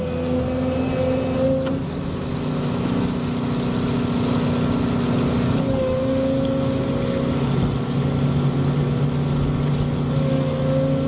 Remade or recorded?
recorded